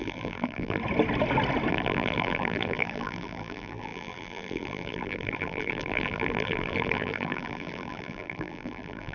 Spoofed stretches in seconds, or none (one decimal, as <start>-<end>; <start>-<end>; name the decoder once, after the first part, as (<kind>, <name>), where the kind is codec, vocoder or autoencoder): 0.0-0.8 (vocoder, BigVGAN v2); 1.7-9.1